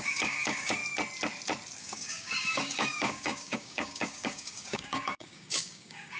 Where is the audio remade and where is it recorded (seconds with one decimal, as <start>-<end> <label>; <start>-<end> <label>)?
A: 0.0-0.8 remade; 0.8-1.8 recorded; 1.8-6.2 remade